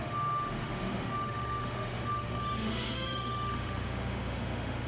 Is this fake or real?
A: fake